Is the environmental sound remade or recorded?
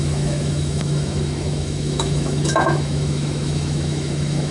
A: remade